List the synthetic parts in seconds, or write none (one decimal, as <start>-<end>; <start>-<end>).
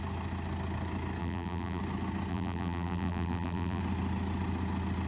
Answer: 1.2-1.8; 2.3-3.8